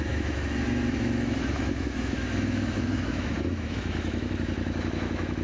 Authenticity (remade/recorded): remade